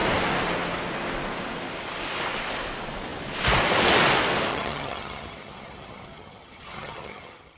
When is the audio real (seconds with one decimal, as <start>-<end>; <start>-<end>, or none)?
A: 0.0-4.5